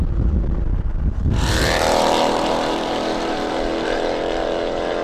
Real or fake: fake